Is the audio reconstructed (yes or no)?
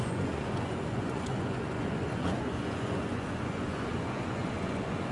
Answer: yes